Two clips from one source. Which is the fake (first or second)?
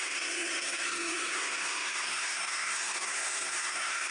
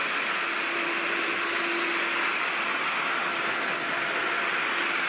first